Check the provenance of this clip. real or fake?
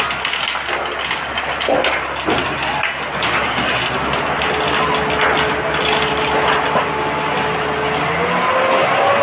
real